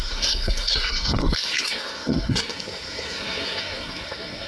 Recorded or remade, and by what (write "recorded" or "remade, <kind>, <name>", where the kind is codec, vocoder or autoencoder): remade, codec, SNAC